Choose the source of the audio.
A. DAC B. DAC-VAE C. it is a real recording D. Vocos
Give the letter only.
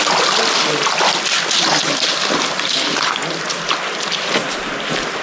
C